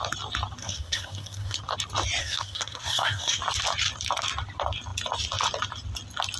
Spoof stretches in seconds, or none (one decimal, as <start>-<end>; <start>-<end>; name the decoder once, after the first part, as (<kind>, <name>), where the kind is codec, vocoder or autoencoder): 0.6-1.6 (codec, SNAC); 2.2-3.4